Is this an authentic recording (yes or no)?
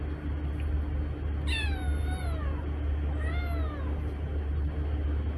yes